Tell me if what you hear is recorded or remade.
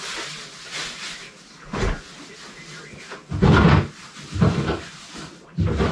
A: recorded